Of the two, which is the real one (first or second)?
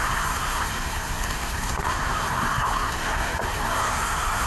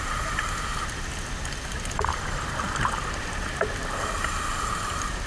second